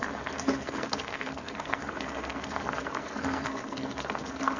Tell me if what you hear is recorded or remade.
remade